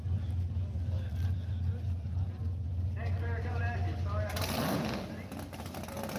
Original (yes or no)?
yes